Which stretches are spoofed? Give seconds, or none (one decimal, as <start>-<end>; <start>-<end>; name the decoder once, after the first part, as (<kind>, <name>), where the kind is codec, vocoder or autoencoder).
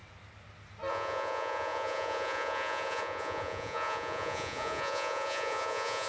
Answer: 0.9-6.1 (vocoder, Vocos)